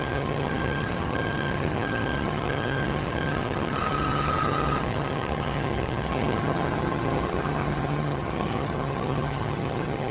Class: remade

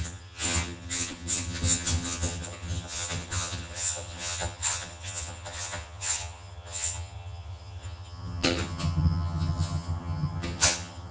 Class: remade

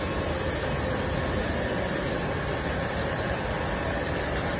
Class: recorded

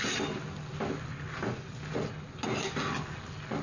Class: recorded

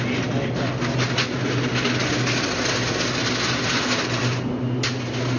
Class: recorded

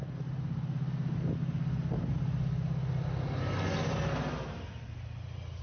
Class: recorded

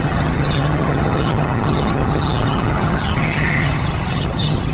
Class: remade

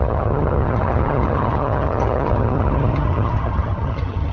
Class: remade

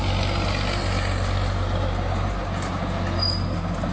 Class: recorded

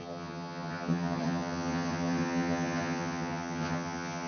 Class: remade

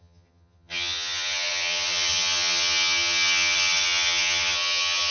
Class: remade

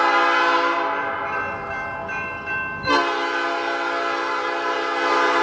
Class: recorded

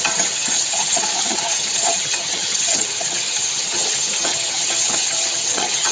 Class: remade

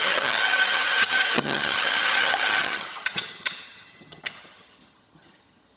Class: remade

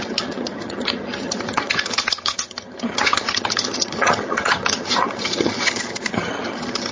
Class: remade